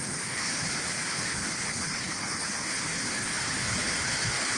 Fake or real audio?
fake